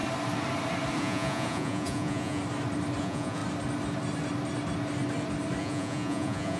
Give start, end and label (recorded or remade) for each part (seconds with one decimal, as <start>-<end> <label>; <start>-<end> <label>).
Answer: 0.0-1.0 recorded; 1.0-2.4 remade; 2.4-3.0 recorded; 3.0-3.4 remade; 3.4-5.6 recorded; 5.6-6.6 remade